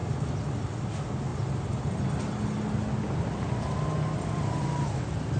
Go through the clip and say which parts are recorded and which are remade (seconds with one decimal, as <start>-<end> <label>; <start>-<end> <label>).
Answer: 0.0-5.4 recorded